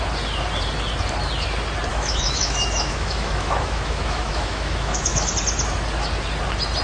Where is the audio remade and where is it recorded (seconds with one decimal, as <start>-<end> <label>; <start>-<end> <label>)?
0.0-1.9 recorded; 1.9-5.3 remade; 5.3-6.8 recorded